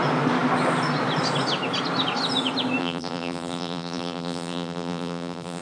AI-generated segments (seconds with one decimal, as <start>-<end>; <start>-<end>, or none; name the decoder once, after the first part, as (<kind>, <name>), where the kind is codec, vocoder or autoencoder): 2.8-5.6 (vocoder, BigVGAN v2)